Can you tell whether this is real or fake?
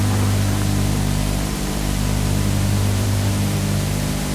fake